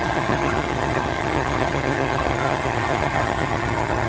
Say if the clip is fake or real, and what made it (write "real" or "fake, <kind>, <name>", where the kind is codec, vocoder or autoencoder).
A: fake, vocoder, HiFi-GAN